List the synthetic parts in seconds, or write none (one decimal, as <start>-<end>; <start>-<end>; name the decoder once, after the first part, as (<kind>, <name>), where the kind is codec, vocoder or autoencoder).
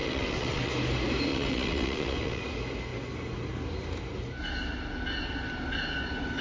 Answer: 0.0-0.7 (vocoder, WaveNeXt); 1.3-2.4